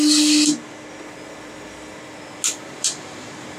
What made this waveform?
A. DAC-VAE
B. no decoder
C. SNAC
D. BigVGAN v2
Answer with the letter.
B